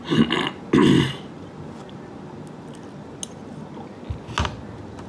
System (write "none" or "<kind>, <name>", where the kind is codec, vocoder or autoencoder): none